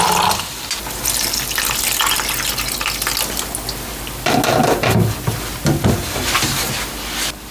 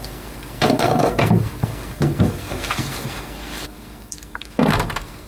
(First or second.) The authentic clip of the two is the first